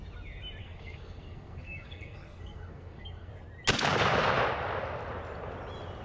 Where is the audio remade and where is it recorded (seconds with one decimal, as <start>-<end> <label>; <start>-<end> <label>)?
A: 0.0-0.6 recorded; 0.6-3.3 remade; 3.3-6.0 recorded

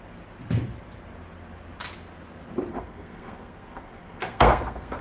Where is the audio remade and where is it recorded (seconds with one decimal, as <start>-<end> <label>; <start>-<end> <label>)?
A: 0.0-2.7 recorded; 2.7-5.0 remade

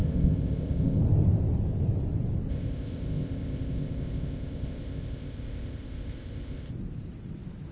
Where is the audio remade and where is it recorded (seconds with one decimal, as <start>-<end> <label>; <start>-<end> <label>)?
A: 0.0-1.0 remade; 1.0-2.5 recorded; 2.5-6.7 remade; 6.7-7.7 recorded

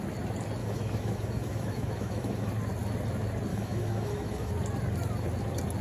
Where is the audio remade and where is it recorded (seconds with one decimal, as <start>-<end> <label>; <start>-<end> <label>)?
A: 0.0-0.6 recorded; 0.6-2.5 remade; 2.5-3.5 recorded; 3.5-4.5 remade; 4.5-5.8 recorded

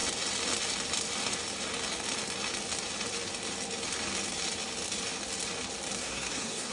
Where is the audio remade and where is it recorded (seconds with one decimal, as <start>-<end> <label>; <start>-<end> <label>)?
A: 0.0-6.0 recorded; 6.0-6.7 remade

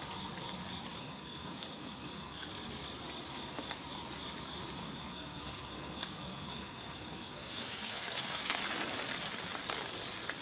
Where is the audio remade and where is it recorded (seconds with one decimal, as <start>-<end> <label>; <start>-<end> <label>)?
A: 0.0-1.0 recorded; 1.0-2.5 remade; 2.5-4.8 recorded; 4.8-8.6 remade; 8.6-10.4 recorded

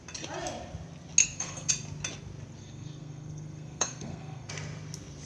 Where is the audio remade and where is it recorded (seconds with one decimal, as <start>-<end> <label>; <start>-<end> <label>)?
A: 0.0-1.2 recorded; 1.2-1.7 remade; 1.7-2.6 recorded; 2.6-4.5 remade; 4.5-5.3 recorded

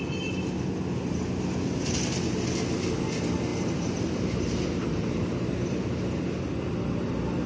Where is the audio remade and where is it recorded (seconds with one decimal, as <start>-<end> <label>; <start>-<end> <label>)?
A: 0.0-3.5 recorded; 3.5-5.6 remade; 5.6-7.5 recorded